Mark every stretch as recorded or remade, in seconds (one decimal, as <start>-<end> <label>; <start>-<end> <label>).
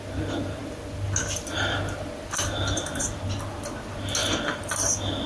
0.0-5.3 recorded